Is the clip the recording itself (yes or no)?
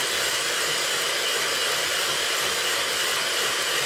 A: yes